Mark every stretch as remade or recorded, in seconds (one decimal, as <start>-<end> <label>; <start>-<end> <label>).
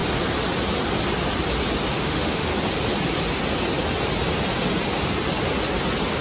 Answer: 0.0-1.9 recorded; 1.9-2.5 remade; 2.5-6.2 recorded